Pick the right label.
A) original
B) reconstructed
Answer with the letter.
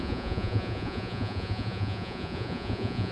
B